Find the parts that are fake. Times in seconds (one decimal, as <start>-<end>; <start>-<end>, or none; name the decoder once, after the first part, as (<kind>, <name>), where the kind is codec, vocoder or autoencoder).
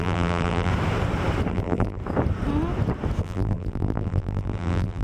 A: 0.0-0.7 (vocoder, BigVGAN v2); 1.5-2.0; 3.2-5.0